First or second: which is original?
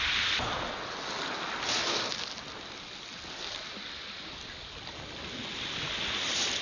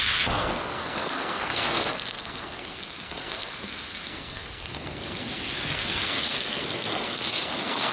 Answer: first